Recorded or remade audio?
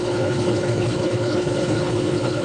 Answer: remade